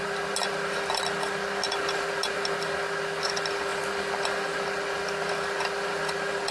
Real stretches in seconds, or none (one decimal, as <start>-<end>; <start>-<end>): 0.0-6.5